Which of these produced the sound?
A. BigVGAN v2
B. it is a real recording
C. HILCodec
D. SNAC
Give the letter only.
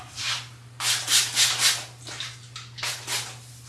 B